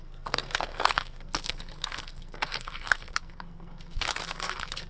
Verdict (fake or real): fake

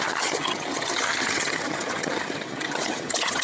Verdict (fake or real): fake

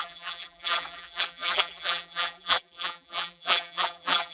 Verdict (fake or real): fake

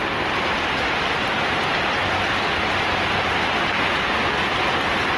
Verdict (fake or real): real